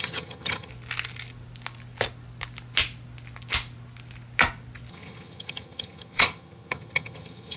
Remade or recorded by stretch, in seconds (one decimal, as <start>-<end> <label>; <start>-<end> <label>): 0.0-0.7 remade; 0.7-4.9 recorded; 4.9-7.6 remade

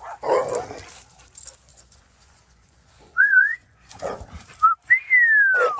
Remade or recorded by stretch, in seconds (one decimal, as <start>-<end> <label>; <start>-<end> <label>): 0.0-1.7 recorded; 1.7-4.2 remade; 4.2-5.8 recorded